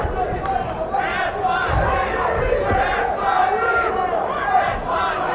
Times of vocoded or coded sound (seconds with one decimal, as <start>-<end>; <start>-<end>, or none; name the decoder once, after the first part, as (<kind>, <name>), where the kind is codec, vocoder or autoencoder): 0.0-5.3 (vocoder, BigVGAN v2)